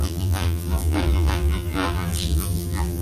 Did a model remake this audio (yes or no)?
yes